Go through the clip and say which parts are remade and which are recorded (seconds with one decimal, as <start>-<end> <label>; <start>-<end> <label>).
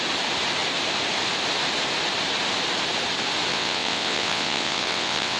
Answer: 0.0-3.5 recorded; 3.5-5.4 remade